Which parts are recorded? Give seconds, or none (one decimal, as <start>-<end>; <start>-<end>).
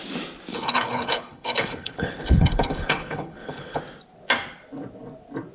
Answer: 0.0-0.5; 3.8-5.5